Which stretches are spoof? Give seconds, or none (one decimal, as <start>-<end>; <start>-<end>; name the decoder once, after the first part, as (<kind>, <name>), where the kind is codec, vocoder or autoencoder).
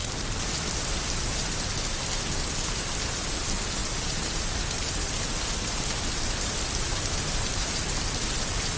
none